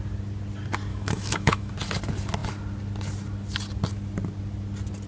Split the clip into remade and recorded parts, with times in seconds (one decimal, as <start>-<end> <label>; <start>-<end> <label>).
0.0-0.9 recorded; 0.9-1.7 remade; 1.7-5.1 recorded

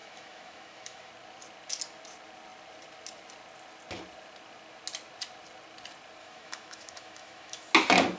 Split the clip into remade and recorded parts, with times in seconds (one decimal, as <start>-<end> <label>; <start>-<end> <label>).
0.0-1.1 remade; 1.1-6.2 recorded; 6.2-7.7 remade; 7.7-8.2 recorded

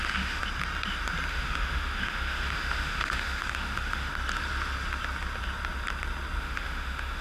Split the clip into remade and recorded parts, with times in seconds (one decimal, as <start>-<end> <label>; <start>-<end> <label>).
0.0-0.4 remade; 0.4-1.3 recorded; 1.3-4.1 remade; 4.1-6.4 recorded; 6.4-7.2 remade

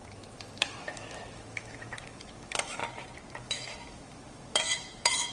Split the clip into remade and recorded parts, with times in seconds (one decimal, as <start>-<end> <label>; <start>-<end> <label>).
0.0-2.8 remade; 2.8-3.4 recorded; 3.4-5.3 remade

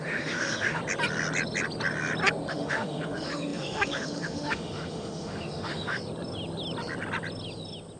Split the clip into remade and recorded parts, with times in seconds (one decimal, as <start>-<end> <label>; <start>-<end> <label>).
0.0-0.8 remade; 0.8-2.5 recorded; 2.5-6.0 remade; 6.0-8.0 recorded